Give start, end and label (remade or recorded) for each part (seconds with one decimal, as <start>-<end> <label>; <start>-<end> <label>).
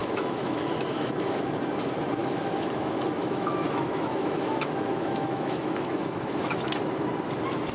0.0-1.5 remade; 1.5-2.2 recorded; 2.2-6.7 remade; 6.7-7.7 recorded